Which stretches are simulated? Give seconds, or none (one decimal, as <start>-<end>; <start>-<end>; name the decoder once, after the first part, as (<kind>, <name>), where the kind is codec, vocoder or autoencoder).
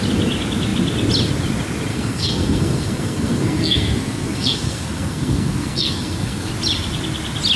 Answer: 1.9-6.5 (codec, SNAC)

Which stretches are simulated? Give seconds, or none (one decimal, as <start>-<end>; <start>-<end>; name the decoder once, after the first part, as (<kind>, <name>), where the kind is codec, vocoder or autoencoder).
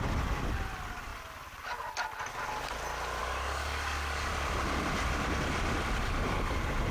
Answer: 3.2-4.3 (codec, DAC)